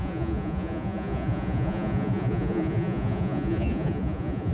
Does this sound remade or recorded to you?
remade